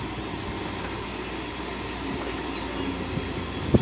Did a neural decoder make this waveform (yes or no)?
no